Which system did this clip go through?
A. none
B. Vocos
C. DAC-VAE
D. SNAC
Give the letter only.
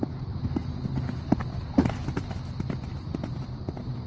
A